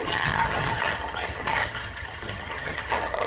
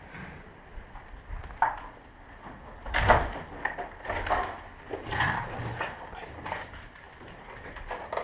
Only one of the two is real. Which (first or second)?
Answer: second